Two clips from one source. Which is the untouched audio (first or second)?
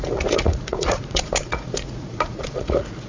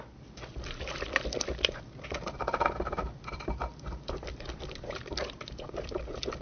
second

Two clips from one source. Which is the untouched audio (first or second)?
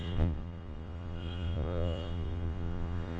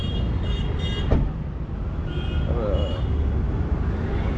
second